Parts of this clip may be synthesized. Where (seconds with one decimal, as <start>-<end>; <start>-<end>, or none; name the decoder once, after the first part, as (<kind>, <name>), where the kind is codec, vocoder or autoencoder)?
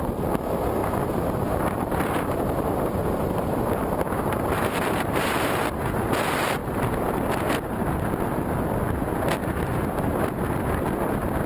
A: 0.8-5.6 (vocoder, BigVGAN v2); 9.4-10.2